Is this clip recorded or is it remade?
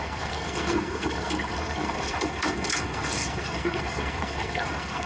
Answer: remade